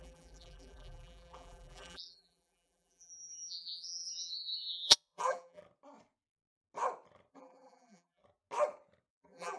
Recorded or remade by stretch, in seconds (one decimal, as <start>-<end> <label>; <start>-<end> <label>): 0.0-5.6 remade; 5.6-7.3 recorded; 7.3-8.2 remade; 8.2-9.1 recorded; 9.1-9.6 remade